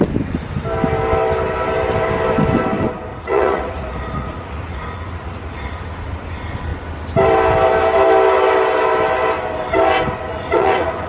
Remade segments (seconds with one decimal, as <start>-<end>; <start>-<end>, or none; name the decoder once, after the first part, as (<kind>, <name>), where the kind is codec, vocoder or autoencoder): 3.1-5.7 (vocoder, Vocos); 10.3-11.1